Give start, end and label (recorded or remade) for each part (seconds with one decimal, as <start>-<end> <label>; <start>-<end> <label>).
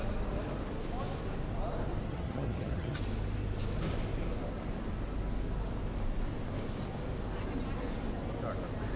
0.0-2.1 recorded; 2.1-3.0 remade; 3.0-9.0 recorded